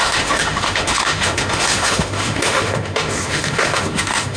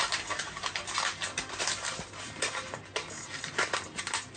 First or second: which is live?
second